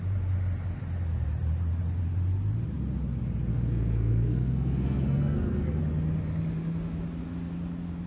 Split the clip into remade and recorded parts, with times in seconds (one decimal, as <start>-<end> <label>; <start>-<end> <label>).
0.0-3.5 recorded; 3.5-5.8 remade; 5.8-8.1 recorded